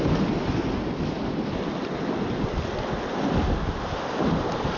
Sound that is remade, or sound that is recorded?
recorded